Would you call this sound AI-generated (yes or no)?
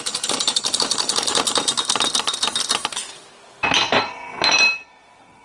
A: no